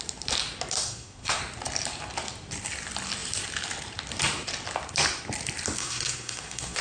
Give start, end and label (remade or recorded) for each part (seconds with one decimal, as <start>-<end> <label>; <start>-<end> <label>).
0.0-0.8 recorded; 0.8-1.4 remade; 1.4-5.8 recorded; 5.8-6.8 remade